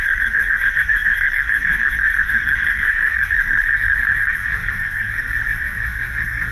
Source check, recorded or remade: remade